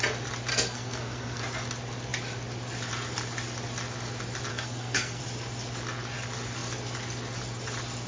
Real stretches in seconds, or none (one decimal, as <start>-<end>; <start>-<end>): 0.0-0.5; 1.4-4.5; 5.2-8.1